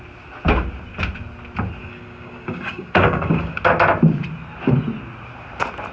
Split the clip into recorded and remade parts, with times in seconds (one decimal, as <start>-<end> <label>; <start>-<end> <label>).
0.0-1.8 recorded; 1.8-3.6 remade; 3.6-5.9 recorded